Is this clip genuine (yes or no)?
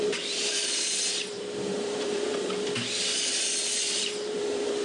no